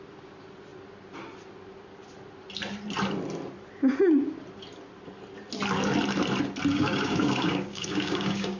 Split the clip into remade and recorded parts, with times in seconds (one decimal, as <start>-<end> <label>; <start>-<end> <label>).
0.0-6.7 recorded; 6.7-8.6 remade